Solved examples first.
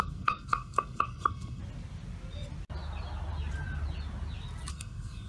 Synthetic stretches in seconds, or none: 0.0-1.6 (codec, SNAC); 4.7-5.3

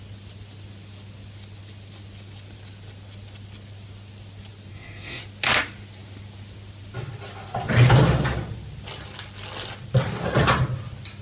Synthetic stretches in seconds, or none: 4.7-5.2 (codec, SNAC)

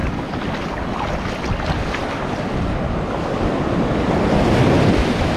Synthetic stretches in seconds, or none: 1.5-2.0 (vocoder, BigVGAN v2); 3.1-5.4

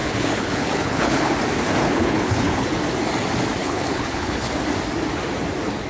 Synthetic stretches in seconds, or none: 0.0-1.3 (codec, HILCodec); 1.8-2.8; 3.6-4.5

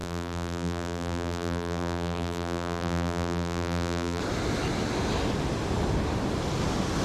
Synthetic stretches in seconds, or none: 0.0-4.2 (vocoder, BigVGAN v2)

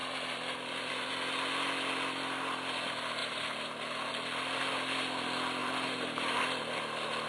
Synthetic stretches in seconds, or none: 0.0-1.1 (vocoder, BigVGAN v2); 3.2-4.1; 5.6-6.4

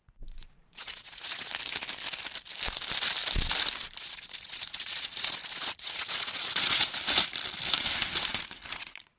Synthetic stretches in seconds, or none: 0.0-1.5 (vocoder, Vocos); 4.0-6.9; 8.7-9.2

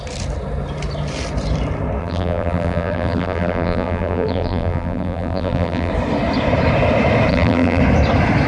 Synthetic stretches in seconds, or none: 2.0-5.9 (vocoder, BigVGAN v2); 7.3-7.8